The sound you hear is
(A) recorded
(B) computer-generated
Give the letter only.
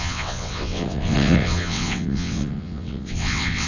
B